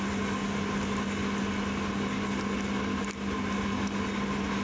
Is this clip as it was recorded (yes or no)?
yes